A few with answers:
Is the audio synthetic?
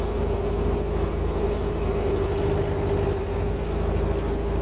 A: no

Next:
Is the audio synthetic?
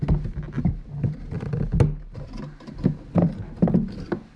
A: no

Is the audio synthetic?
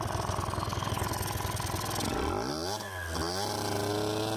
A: no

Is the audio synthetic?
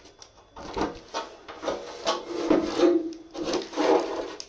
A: no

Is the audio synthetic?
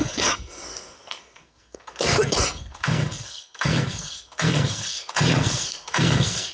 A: yes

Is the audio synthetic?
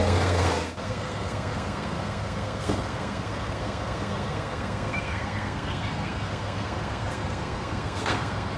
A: yes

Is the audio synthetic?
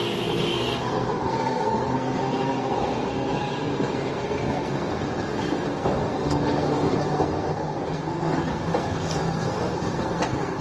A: yes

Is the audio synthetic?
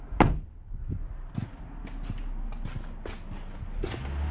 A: no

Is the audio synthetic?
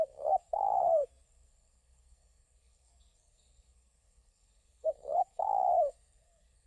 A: yes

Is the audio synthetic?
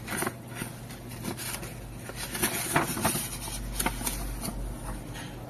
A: no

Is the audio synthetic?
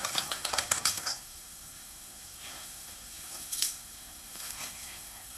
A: yes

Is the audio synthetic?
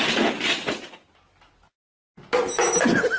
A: no